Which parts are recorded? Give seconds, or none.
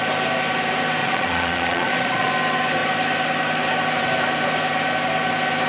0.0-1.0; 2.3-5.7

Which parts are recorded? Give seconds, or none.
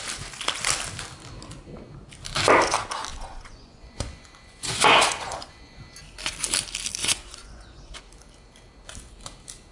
0.0-3.1; 5.8-7.0; 8.0-9.7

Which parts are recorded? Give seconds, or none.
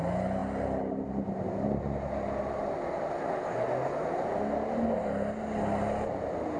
0.0-6.6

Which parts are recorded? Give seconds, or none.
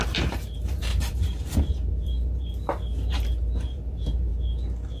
2.5-3.1; 4.3-5.0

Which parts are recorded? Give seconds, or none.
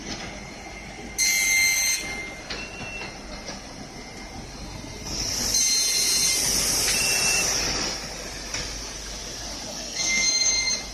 0.0-9.7; 10.5-10.9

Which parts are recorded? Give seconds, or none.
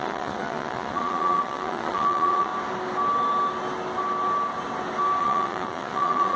2.5-5.2